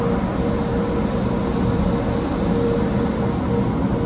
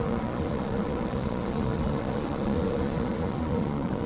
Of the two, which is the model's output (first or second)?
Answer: second